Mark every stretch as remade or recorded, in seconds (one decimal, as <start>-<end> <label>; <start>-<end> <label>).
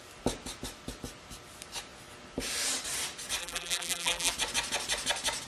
0.0-3.4 recorded; 3.4-4.3 remade; 4.3-5.5 recorded